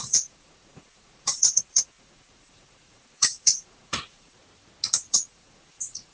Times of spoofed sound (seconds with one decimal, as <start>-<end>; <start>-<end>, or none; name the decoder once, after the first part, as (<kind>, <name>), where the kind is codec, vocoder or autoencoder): 0.0-4.4 (vocoder, Vocos); 5.1-6.1